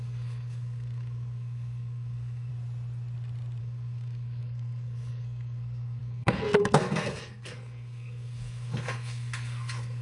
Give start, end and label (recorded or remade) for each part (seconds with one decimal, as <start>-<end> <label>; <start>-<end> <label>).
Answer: 0.0-2.5 remade; 2.5-3.6 recorded; 3.6-10.0 remade

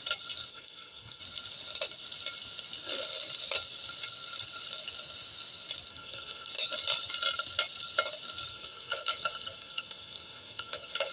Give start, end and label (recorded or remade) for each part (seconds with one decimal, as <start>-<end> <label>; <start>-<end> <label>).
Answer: 0.0-0.5 recorded; 0.5-1.2 remade; 1.2-5.9 recorded; 5.9-6.5 remade; 6.5-8.5 recorded; 8.5-11.1 remade

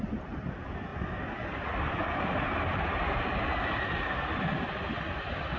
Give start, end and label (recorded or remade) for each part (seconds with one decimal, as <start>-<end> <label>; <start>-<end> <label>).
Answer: 0.0-5.6 recorded